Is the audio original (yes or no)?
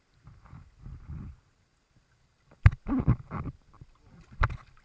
yes